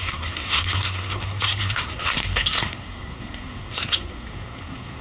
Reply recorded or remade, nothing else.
remade